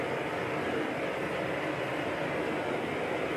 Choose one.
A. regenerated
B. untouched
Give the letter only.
B